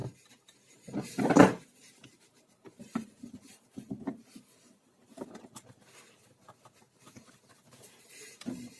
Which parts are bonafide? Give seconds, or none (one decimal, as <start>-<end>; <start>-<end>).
0.0-0.7